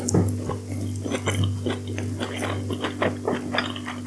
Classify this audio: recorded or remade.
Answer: recorded